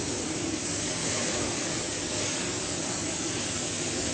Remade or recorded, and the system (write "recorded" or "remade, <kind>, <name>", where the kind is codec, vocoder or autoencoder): remade, codec, DAC